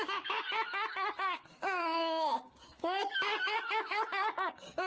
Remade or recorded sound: remade